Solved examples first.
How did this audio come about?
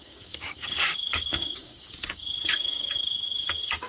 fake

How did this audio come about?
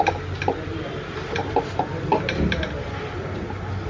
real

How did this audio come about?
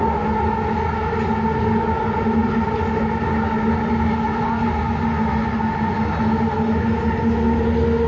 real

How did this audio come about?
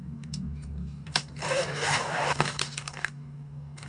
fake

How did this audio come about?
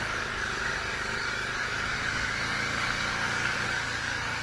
fake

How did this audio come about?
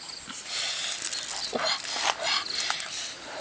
real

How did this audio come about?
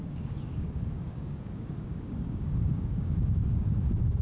fake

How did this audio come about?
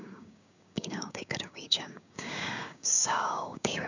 fake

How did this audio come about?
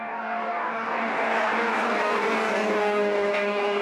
fake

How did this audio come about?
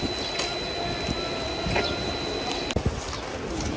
real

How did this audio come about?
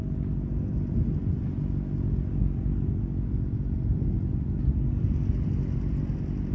real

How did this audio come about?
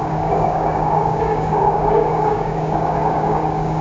fake